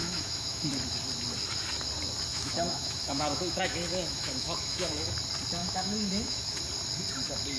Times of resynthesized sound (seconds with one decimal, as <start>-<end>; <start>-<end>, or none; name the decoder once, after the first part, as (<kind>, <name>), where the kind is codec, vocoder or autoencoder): 0.0-0.7 (autoencoder, DAC-VAE); 2.3-5.1; 5.6-6.6